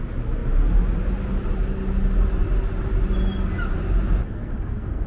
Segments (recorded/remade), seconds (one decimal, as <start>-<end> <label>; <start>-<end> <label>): 0.0-4.2 recorded; 4.2-5.1 remade